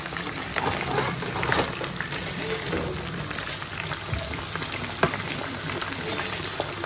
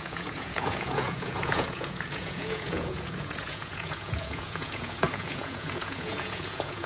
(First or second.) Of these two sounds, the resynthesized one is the second